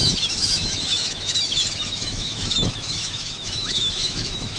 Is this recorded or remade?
remade